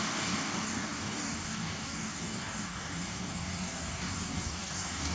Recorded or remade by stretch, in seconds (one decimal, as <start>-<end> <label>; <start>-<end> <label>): 0.0-5.1 remade